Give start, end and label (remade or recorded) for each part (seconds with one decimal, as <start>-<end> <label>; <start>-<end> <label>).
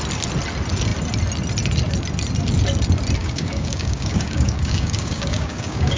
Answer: 0.0-3.2 recorded; 3.2-6.0 remade